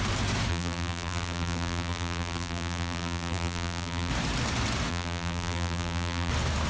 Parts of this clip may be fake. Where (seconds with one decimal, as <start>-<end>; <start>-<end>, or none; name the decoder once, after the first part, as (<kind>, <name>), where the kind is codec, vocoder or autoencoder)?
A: 0.5-4.1 (vocoder, BigVGAN v2); 4.9-6.3